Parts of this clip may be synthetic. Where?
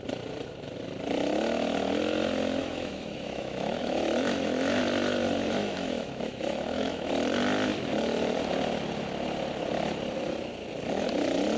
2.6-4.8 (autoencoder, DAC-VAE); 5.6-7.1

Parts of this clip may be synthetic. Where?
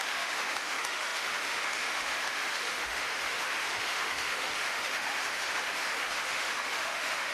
0.0-7.3 (autoencoder, DAC-VAE)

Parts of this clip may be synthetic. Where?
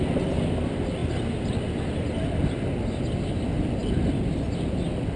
none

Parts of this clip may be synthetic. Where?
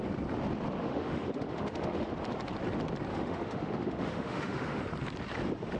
0.8-2.1 (autoencoder, DAC-VAE); 3.1-4.8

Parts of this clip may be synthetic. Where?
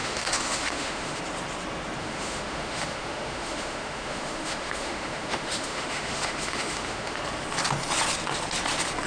0.0-1.2 (autoencoder, DAC-VAE); 2.0-7.2